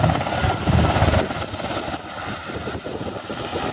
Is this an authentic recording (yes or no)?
yes